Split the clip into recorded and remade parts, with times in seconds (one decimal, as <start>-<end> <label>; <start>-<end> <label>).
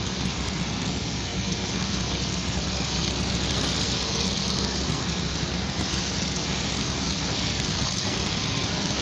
0.0-9.0 remade